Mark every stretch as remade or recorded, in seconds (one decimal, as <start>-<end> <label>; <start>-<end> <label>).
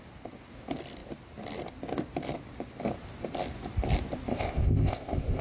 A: 0.0-4.3 recorded; 4.3-5.4 remade